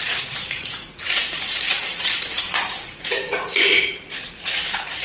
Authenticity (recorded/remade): remade